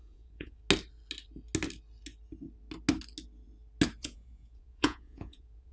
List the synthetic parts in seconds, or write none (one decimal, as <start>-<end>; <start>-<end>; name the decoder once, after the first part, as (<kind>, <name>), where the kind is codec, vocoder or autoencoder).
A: 0.0-0.6 (vocoder, Vocos); 4.0-5.7